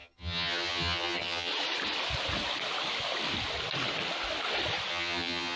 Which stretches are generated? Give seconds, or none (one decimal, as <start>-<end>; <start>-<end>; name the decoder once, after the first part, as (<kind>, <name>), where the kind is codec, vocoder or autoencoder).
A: 0.0-1.5 (vocoder, HiFi-GAN); 4.9-5.6